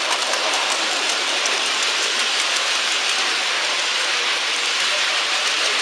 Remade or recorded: remade